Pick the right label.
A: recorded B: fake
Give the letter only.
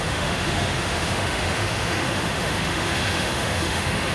B